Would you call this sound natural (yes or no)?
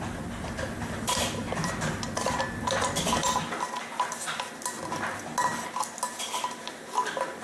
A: yes